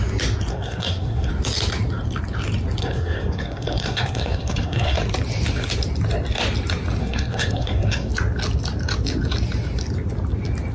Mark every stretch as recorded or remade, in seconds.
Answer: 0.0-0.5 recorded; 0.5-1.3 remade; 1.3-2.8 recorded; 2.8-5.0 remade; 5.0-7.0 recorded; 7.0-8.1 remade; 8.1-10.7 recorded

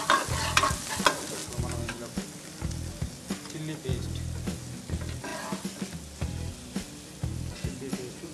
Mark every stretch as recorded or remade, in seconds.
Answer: 0.0-8.3 recorded

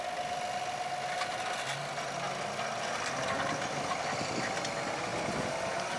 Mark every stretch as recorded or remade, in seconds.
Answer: 0.0-6.0 recorded

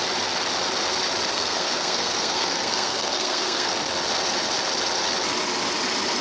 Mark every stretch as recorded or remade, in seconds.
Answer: 0.0-1.3 recorded; 1.3-3.7 remade; 3.7-6.2 recorded

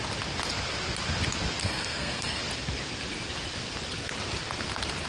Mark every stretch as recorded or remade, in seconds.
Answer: 0.0-1.6 recorded; 1.6-2.4 remade; 2.4-5.1 recorded

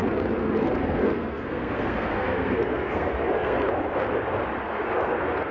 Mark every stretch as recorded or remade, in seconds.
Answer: 0.0-0.4 recorded; 0.4-3.7 remade; 3.7-4.6 recorded; 4.6-5.5 remade

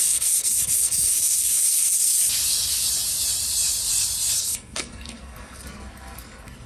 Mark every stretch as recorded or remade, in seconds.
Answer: 0.0-2.1 remade; 2.1-4.4 recorded; 4.4-6.7 remade